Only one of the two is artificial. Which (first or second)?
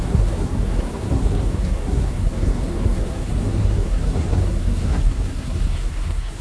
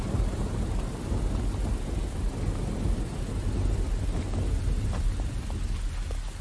first